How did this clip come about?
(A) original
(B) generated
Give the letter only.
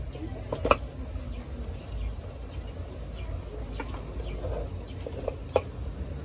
A